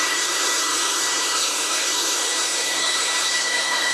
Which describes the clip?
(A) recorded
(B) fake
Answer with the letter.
B